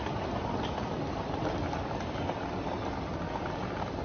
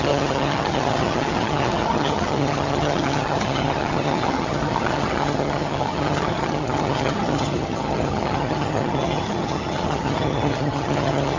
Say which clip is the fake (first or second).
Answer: second